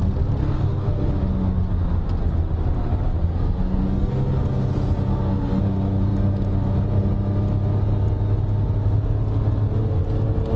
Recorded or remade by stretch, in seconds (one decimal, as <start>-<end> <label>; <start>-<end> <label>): 0.0-0.4 recorded; 0.4-1.1 remade; 1.1-3.2 recorded; 3.2-4.1 remade; 4.1-5.1 recorded; 5.1-5.6 remade; 5.6-10.6 recorded